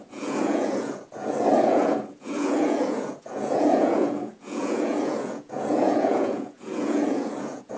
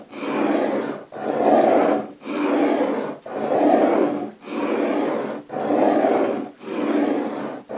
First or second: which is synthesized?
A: first